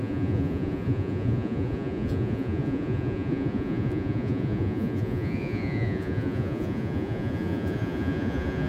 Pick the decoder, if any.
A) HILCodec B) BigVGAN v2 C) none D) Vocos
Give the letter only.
D